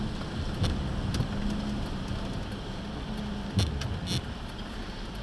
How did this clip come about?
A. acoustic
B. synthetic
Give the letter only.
A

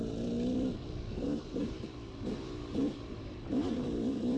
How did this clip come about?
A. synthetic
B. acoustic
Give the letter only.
A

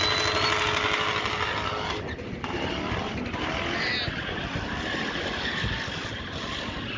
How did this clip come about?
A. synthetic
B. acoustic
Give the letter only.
B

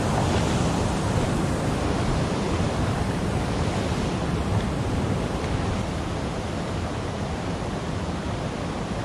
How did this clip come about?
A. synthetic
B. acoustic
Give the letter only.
B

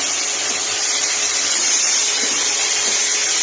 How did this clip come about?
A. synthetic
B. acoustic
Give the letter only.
B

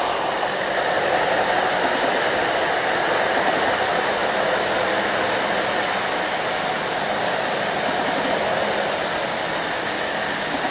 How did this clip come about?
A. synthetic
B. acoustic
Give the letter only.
B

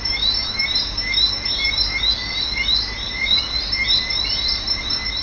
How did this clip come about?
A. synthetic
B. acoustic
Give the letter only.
A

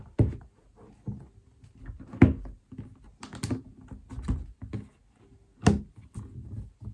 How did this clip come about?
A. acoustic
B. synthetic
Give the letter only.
A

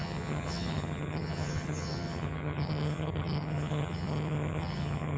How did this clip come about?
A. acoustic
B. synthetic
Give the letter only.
B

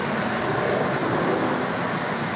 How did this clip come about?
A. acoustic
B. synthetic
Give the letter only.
A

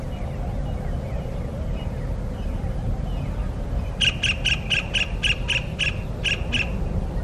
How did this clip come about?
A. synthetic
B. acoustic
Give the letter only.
B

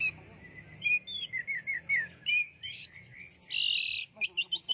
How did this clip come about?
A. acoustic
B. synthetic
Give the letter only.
A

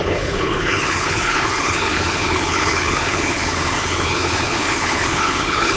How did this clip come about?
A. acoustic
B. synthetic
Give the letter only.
B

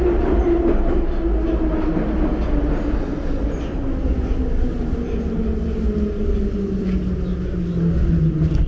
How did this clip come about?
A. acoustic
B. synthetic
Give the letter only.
A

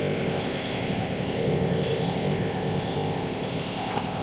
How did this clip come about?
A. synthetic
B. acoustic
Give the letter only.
A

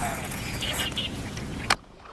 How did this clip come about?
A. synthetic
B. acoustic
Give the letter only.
A